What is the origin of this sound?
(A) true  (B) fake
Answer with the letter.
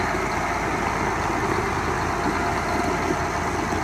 A